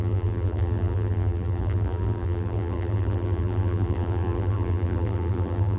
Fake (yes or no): yes